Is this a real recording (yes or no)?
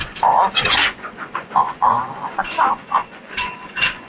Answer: no